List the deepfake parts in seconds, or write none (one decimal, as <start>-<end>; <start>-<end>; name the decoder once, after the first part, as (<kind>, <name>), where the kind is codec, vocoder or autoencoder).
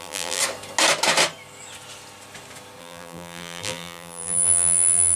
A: 0.0-0.4 (vocoder, BigVGAN v2); 2.8-5.2